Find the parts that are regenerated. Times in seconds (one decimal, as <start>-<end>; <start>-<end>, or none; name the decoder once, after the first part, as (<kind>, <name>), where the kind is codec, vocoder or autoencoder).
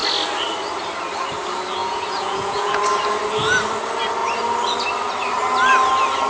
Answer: 1.8-2.8 (vocoder, Vocos)